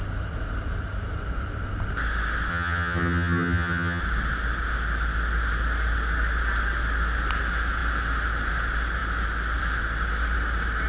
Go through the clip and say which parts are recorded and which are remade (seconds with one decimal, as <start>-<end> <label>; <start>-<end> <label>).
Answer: 0.0-2.5 recorded; 2.5-4.0 remade; 4.0-10.9 recorded

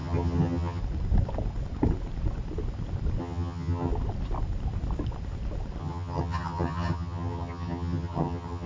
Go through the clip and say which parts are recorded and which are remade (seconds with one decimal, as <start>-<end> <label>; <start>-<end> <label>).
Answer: 0.0-0.8 remade; 0.8-3.2 recorded; 3.2-3.9 remade; 3.9-5.8 recorded; 5.8-8.7 remade

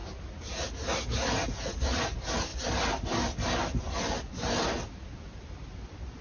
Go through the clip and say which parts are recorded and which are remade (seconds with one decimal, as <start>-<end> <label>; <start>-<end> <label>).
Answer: 0.0-6.2 recorded

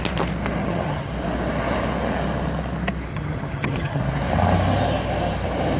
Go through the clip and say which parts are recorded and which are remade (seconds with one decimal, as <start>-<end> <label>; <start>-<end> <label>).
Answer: 0.0-0.6 recorded; 0.6-1.1 remade; 1.1-3.1 recorded; 3.1-4.0 remade; 4.0-5.8 recorded

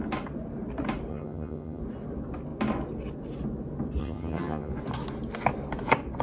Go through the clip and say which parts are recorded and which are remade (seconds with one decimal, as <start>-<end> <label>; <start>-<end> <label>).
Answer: 0.0-1.1 recorded; 1.1-1.8 remade; 1.8-4.0 recorded; 4.0-4.7 remade; 4.7-6.2 recorded

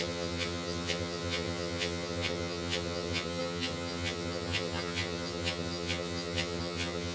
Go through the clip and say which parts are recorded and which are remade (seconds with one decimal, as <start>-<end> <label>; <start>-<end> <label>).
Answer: 0.0-7.1 remade